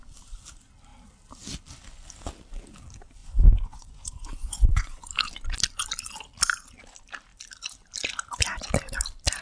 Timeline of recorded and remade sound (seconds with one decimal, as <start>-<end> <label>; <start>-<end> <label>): 0.0-3.2 recorded; 3.2-5.1 remade; 5.1-9.4 recorded